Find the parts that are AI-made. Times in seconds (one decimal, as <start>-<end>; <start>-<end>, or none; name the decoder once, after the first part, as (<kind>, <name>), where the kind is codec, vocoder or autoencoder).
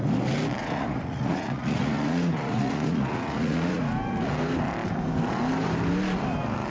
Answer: 0.6-3.8 (vocoder, Vocos)